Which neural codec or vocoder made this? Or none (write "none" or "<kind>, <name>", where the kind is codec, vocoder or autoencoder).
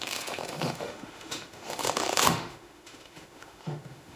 autoencoder, DAC-VAE